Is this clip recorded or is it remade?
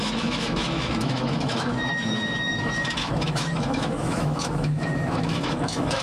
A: remade